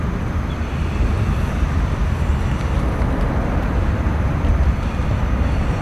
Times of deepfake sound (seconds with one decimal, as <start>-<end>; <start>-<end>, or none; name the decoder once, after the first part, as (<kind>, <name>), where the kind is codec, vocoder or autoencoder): 1.7-2.3 (vocoder, BigVGAN v2); 3.4-4.3